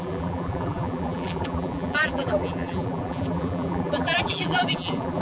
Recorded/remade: remade